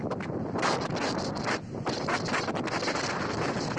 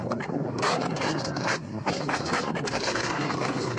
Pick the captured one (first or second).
first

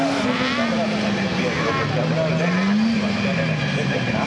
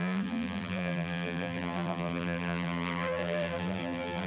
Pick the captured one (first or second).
first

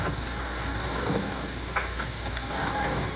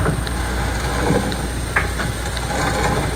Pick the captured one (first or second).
second